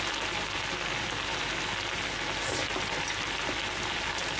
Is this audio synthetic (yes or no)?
no